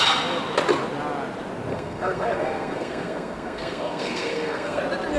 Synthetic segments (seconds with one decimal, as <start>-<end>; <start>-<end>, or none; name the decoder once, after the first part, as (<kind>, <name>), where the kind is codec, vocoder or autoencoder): 1.7-4.8 (codec, SNAC)